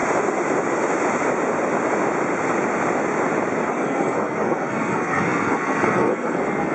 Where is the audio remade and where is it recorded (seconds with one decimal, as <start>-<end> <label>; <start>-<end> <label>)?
0.0-3.7 recorded; 3.7-6.7 remade